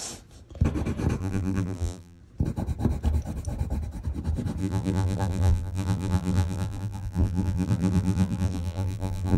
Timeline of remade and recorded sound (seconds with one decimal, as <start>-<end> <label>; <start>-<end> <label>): 0.0-1.2 recorded; 1.2-2.2 remade; 2.2-4.6 recorded; 4.6-9.4 remade